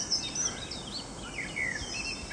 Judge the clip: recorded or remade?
recorded